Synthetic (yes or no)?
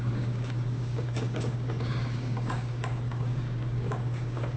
yes